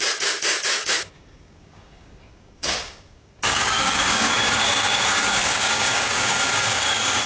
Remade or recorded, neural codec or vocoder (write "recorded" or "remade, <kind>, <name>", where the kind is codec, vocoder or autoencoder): remade, codec, DAC